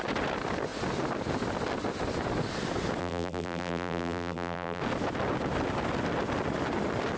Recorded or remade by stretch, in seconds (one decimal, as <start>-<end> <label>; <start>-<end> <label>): 0.0-3.0 recorded; 3.0-4.8 remade; 4.8-7.2 recorded